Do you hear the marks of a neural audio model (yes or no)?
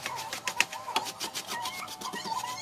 no